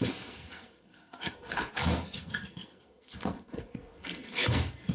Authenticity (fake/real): fake